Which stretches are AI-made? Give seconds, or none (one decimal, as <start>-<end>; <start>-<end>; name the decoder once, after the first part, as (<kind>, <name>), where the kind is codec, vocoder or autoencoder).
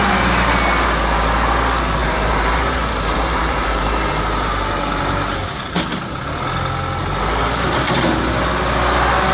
2.0-5.8 (vocoder, BigVGAN v2)